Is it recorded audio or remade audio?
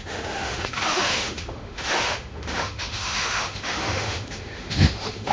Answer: remade